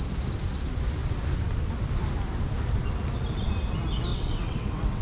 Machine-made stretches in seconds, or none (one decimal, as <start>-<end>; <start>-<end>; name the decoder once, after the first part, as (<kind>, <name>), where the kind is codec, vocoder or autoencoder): 4.1-5.0 (vocoder, WaveNeXt)